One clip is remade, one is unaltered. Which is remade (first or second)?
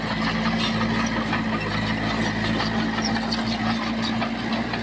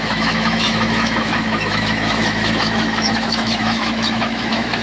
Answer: second